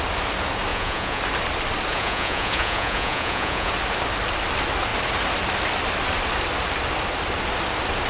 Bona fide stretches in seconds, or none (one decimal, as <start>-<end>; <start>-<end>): 0.0-0.7; 1.2-1.9; 3.7-8.1